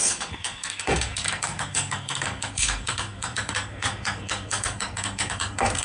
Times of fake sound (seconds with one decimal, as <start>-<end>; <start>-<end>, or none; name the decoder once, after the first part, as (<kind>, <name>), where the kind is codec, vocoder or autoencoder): 0.0-5.8 (codec, SNAC)